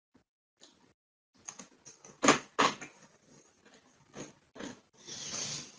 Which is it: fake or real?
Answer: real